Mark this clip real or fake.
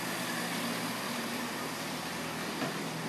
real